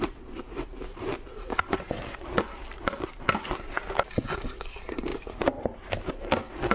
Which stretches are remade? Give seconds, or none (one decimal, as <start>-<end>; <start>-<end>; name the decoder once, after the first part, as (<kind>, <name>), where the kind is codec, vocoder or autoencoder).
none

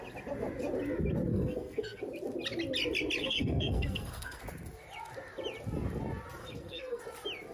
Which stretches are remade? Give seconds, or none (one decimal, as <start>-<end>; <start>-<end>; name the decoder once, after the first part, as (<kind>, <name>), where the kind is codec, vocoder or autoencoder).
1.3-2.0 (codec, SNAC); 3.2-4.4; 6.4-7.0

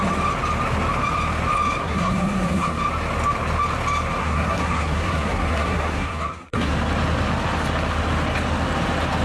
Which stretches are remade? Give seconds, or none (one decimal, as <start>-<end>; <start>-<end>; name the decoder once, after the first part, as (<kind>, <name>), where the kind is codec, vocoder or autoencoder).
1.8-2.8 (codec, SNAC); 4.2-6.7

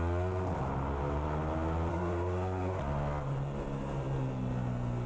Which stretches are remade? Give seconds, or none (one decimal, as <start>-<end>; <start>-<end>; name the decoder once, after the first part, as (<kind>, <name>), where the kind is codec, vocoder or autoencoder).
1.9-2.8 (codec, SNAC)

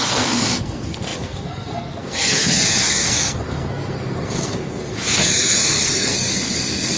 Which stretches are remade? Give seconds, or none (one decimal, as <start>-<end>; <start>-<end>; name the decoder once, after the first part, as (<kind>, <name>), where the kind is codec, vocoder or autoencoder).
0.0-7.0 (codec, SNAC)

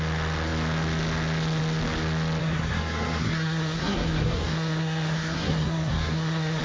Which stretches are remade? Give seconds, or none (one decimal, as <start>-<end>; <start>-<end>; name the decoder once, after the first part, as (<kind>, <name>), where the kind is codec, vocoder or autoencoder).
2.4-6.6 (codec, SNAC)